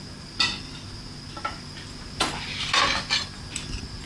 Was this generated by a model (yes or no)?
no